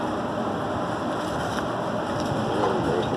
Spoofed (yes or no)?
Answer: no